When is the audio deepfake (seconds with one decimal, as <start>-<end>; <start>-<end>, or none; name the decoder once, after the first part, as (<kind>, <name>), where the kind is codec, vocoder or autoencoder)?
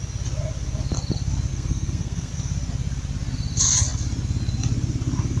1.5-2.3 (codec, SNAC)